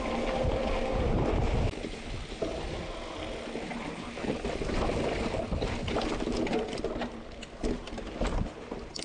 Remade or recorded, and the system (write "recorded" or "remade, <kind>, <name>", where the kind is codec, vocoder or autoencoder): recorded